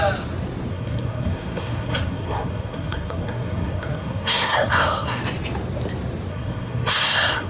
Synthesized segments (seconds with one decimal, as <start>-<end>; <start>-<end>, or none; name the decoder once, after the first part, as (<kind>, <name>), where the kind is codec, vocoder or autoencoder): 0.7-5.2 (codec, SNAC); 6.3-7.5